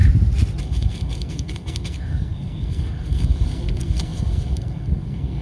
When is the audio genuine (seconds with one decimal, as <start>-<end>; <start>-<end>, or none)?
0.0-0.6